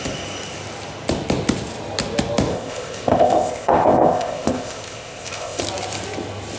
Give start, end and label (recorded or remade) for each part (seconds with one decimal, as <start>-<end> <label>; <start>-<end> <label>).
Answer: 0.0-2.5 recorded; 2.5-5.6 remade; 5.6-6.6 recorded